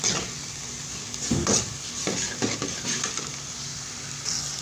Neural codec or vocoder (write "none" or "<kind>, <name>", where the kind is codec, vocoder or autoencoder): none